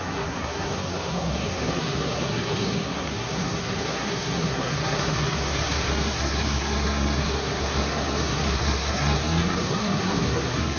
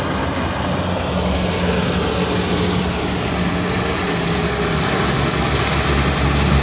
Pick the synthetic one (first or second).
first